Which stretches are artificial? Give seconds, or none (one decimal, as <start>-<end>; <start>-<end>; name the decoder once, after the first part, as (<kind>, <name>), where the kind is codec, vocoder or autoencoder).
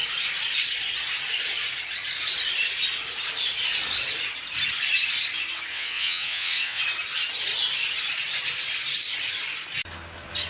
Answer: 5.7-6.8 (vocoder, WaveNeXt)